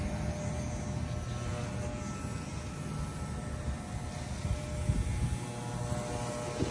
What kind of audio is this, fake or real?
real